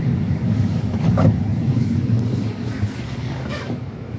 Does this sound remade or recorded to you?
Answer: remade